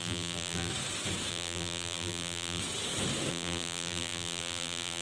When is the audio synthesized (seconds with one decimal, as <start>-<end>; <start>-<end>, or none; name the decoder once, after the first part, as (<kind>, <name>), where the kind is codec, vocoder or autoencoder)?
0.0-0.7 (vocoder, BigVGAN v2); 1.3-2.6; 3.3-5.0